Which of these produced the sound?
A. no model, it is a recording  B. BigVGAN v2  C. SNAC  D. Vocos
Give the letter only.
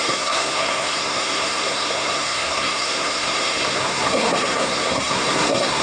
C